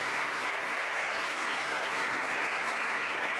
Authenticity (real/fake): fake